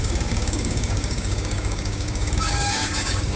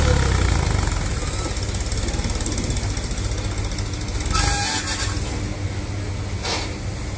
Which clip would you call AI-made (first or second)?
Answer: first